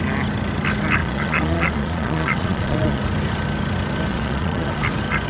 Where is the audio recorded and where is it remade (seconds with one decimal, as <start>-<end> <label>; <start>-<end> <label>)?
0.0-1.0 recorded; 1.0-3.0 remade; 3.0-4.1 recorded; 4.1-4.8 remade; 4.8-5.3 recorded